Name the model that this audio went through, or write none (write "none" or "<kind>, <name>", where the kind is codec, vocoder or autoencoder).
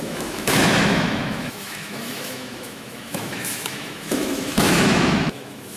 autoencoder, DAC-VAE